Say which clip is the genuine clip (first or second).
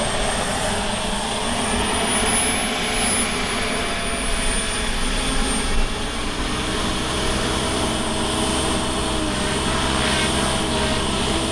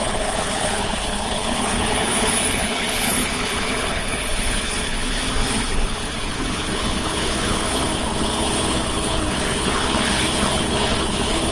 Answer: first